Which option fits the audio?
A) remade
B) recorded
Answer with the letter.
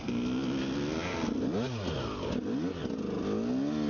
B